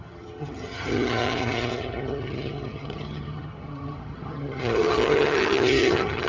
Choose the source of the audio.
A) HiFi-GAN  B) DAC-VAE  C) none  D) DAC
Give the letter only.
A